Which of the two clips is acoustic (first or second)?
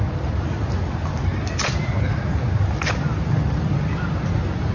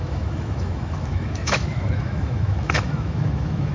first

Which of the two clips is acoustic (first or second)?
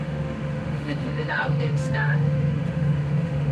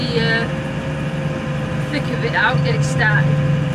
second